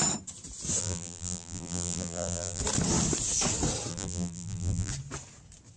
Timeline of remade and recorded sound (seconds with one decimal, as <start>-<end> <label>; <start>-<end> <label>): 0.0-0.8 recorded; 0.8-2.6 remade; 2.6-3.9 recorded; 3.9-4.9 remade; 4.9-5.8 recorded